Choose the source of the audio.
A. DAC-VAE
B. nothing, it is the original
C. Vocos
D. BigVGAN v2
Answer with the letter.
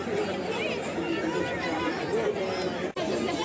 B